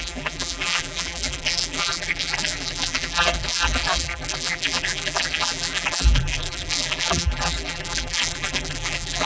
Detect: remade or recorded remade